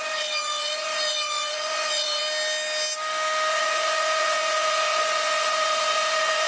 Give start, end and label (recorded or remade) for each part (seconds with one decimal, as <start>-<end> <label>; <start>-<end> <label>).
0.0-2.2 remade; 2.2-3.5 recorded; 3.5-6.5 remade